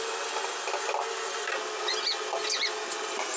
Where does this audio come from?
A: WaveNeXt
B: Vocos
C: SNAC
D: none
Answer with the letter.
D